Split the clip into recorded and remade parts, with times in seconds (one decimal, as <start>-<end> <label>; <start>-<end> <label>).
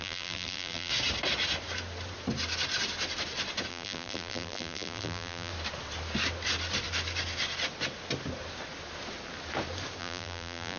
0.0-0.9 remade; 0.9-3.7 recorded; 3.7-5.5 remade; 5.5-10.0 recorded; 10.0-10.8 remade